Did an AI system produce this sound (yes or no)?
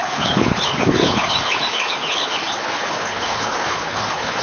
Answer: yes